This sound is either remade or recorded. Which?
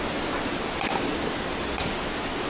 recorded